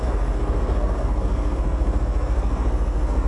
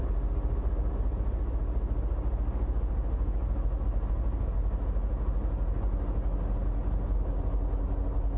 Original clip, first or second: second